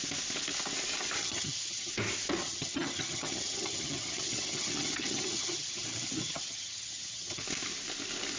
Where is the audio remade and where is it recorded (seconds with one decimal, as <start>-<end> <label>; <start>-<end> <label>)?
0.0-1.2 recorded; 1.2-1.9 remade; 1.9-2.4 recorded; 2.4-7.4 remade; 7.4-8.4 recorded